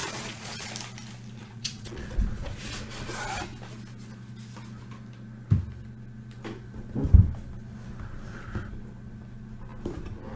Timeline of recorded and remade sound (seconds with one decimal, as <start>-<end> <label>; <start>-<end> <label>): 0.0-0.7 remade; 0.7-1.4 recorded; 1.4-2.8 remade; 2.8-10.4 recorded